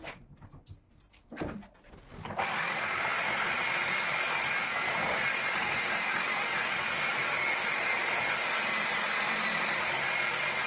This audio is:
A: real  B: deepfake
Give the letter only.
A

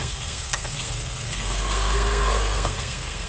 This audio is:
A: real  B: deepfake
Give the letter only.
B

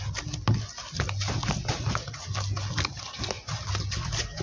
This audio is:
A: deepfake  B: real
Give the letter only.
B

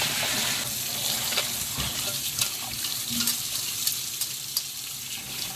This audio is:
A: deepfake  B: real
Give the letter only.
B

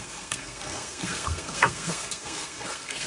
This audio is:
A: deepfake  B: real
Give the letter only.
A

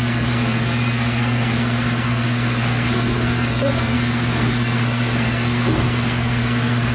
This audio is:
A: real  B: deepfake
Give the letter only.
B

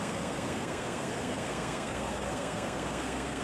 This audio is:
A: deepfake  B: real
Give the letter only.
A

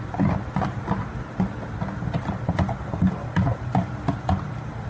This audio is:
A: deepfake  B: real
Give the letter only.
B